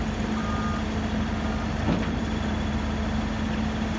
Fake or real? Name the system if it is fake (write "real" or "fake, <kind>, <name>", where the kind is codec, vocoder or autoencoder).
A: real